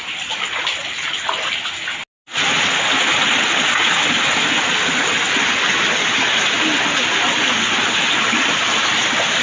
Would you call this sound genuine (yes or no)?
yes